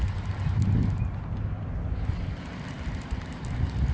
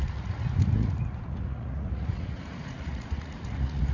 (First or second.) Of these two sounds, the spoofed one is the second